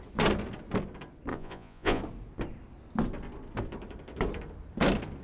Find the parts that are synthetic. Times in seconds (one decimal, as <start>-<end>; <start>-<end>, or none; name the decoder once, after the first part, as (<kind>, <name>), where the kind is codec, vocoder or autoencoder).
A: 1.3-2.0 (vocoder, Vocos)